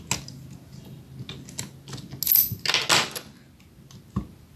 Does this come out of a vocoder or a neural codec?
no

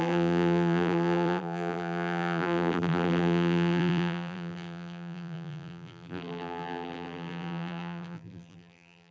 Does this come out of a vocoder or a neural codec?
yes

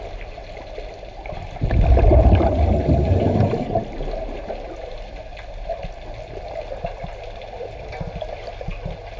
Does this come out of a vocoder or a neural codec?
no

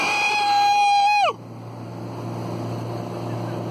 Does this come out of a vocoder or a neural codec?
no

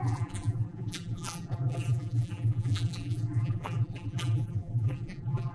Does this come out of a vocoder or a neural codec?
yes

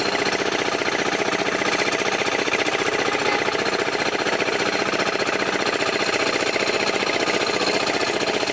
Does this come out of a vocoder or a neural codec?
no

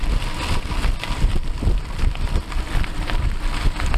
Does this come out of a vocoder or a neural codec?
no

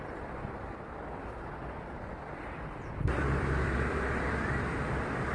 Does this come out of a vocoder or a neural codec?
yes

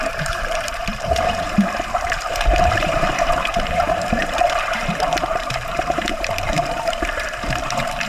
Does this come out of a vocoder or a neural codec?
yes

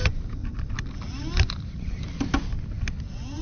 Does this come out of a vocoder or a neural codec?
no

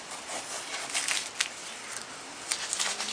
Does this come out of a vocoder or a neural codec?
yes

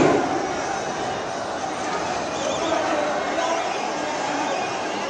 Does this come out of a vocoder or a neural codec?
no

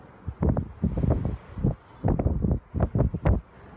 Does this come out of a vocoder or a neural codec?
no